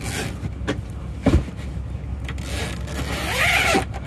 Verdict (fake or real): real